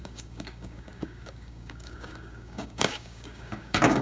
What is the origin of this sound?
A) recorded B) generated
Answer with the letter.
B